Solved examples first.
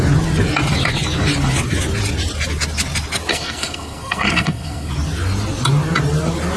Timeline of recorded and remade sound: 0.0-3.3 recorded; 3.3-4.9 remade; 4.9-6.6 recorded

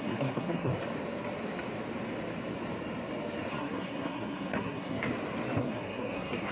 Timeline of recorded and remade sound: 0.0-0.7 remade; 0.7-3.5 recorded; 3.5-5.1 remade; 5.1-5.6 recorded; 5.6-6.5 remade

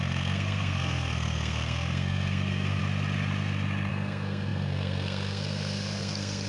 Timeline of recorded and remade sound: 0.0-2.8 remade; 2.8-3.9 recorded; 3.9-6.5 remade

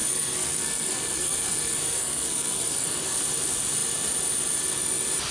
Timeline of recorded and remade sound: 0.0-3.2 remade; 3.2-5.3 recorded